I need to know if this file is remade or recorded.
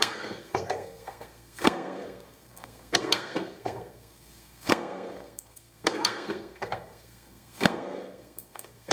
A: remade